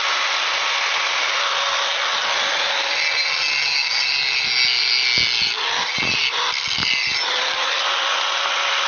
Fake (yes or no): no